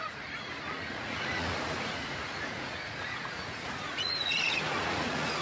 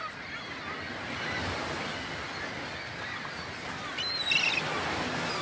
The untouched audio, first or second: second